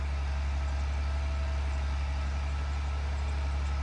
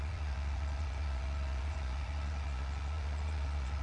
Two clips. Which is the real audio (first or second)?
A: first